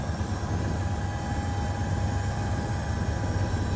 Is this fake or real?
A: real